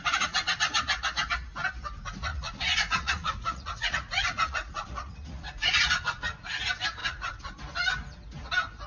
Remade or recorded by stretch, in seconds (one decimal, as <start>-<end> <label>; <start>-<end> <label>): 0.0-2.3 recorded; 2.3-6.5 remade; 6.5-7.0 recorded; 7.0-7.6 remade; 7.6-8.9 recorded